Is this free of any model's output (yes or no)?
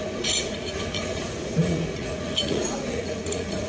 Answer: no